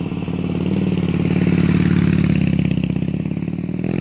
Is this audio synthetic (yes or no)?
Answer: no